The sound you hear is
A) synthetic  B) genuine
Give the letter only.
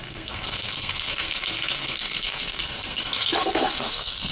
A